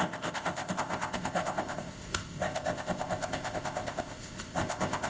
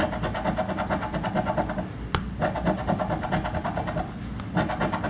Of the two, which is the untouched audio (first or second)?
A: second